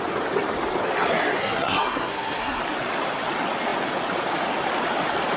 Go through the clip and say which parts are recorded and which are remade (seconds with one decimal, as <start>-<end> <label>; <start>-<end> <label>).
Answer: 0.0-1.4 recorded; 1.4-2.6 remade; 2.6-5.4 recorded